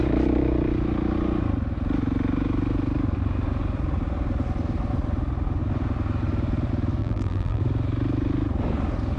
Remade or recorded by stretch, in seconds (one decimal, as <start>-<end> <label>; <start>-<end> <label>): 0.0-7.0 recorded; 7.0-7.6 remade; 7.6-9.2 recorded